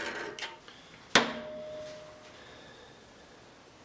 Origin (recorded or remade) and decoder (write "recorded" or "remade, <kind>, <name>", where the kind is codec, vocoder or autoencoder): recorded